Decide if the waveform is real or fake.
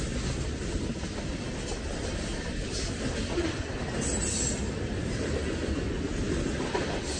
real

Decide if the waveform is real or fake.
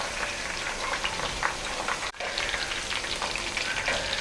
real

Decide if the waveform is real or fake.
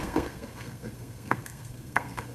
fake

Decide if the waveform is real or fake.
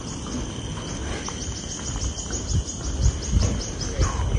real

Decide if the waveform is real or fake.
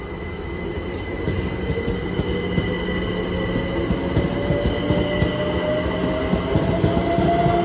real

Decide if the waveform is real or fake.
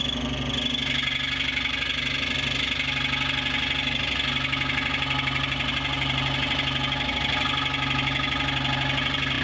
real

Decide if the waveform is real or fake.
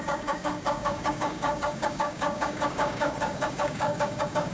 fake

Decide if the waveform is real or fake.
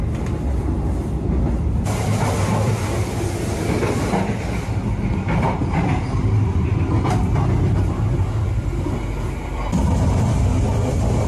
real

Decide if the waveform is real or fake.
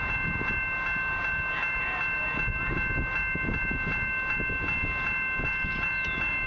real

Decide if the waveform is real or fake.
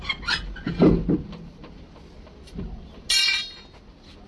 real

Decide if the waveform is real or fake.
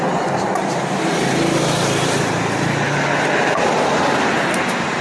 real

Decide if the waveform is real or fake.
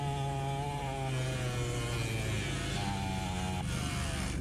real